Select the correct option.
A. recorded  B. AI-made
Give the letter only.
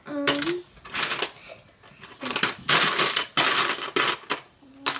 A